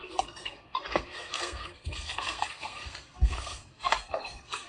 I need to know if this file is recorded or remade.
remade